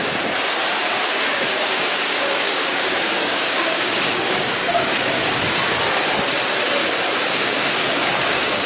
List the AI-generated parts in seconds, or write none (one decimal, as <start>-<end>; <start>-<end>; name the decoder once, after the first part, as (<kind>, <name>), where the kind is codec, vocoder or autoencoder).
1.1-5.3 (codec, DAC); 6.8-8.7